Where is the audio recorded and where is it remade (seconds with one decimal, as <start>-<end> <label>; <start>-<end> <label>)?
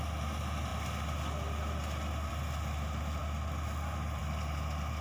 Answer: 0.0-5.0 recorded